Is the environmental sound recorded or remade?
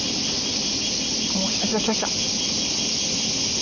recorded